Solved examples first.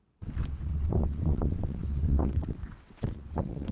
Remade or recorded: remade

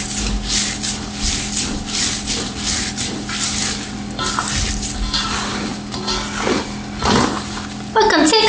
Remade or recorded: recorded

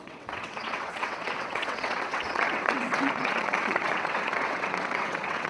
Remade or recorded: remade